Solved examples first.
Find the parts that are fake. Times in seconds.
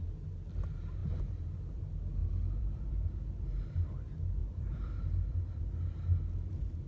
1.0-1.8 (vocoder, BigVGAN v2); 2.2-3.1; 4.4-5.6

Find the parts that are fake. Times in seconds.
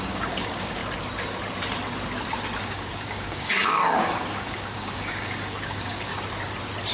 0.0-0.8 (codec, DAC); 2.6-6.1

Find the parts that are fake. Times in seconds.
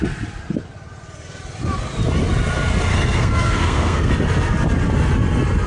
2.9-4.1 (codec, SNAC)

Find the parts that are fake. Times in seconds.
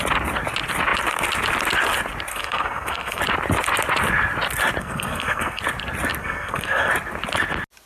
2.3-3.2 (codec, SNAC); 4.8-5.6; 6.2-6.9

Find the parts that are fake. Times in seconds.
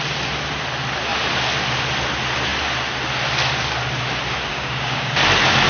4.5-5.1 (codec, DAC)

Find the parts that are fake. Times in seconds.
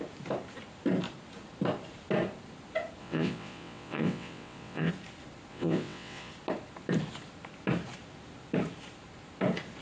3.0-4.9 (vocoder, WaveNeXt); 5.5-6.3